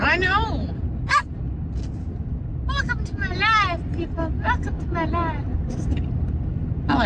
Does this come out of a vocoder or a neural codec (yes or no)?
no